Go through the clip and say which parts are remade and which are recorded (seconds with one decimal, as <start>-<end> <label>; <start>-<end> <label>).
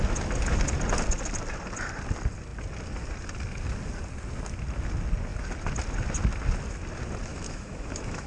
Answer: 0.0-7.3 recorded; 7.3-8.3 remade